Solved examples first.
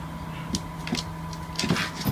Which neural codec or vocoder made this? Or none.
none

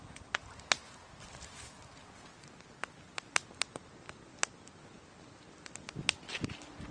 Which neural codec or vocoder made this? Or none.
none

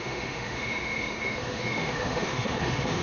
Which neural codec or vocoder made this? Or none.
autoencoder, DAC-VAE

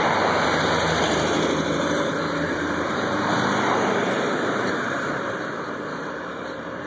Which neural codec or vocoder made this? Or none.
vocoder, BigVGAN v2